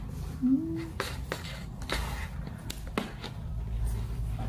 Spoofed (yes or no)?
no